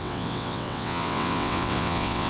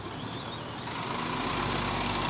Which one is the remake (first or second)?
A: first